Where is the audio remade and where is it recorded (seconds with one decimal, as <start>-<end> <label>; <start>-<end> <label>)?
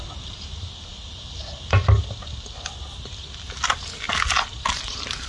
0.0-5.3 recorded